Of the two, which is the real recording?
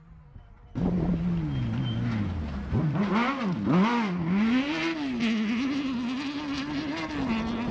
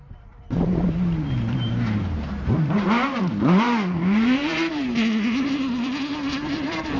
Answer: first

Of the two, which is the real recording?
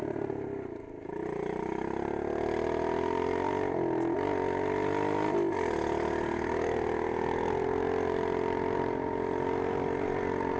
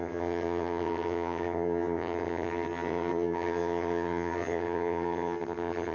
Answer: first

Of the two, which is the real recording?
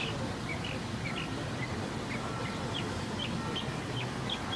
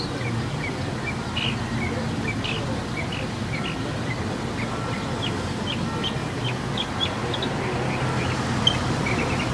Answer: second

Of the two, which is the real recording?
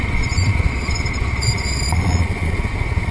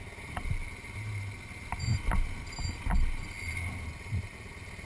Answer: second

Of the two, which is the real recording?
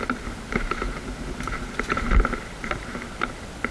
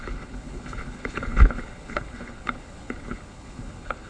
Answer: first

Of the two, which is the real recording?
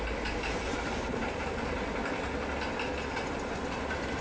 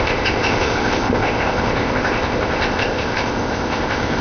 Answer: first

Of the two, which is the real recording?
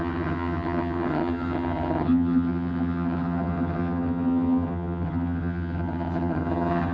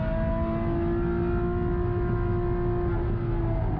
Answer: second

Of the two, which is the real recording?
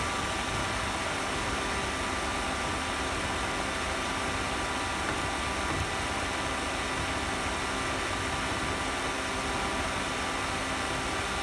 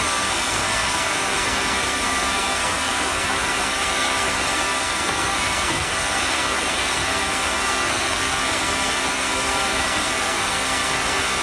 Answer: first